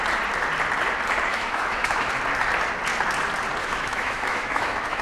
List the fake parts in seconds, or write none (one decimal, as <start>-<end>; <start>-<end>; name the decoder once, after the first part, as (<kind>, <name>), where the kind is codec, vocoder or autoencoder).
1.3-2.1 (autoencoder, DAC-VAE); 3.6-5.0

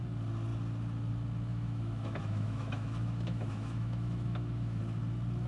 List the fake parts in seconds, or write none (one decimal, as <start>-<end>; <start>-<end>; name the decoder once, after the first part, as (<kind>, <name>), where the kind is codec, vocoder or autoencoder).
1.5-4.8 (autoencoder, DAC-VAE)

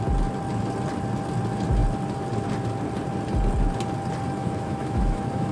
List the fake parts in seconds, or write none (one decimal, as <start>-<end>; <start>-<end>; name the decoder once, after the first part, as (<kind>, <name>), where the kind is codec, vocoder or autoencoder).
4.4-5.5 (autoencoder, DAC-VAE)

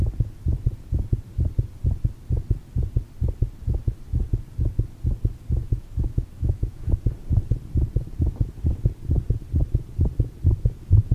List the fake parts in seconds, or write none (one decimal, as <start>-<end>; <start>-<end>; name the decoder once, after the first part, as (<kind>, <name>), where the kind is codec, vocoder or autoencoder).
5.6-6.9 (autoencoder, DAC-VAE)

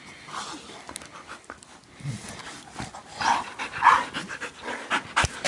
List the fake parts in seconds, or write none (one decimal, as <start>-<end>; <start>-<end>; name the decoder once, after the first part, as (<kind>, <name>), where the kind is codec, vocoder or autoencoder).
none

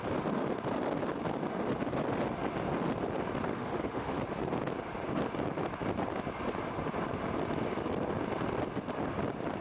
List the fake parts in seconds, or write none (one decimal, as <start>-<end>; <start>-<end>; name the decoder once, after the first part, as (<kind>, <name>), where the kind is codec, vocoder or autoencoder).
3.5-4.2 (autoencoder, DAC-VAE)

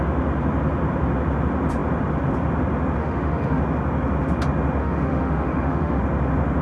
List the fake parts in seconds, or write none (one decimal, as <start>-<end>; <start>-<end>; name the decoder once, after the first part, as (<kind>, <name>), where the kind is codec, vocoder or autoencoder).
3.0-3.6 (autoencoder, DAC-VAE); 4.8-6.0